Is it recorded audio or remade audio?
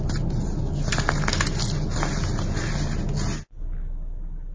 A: recorded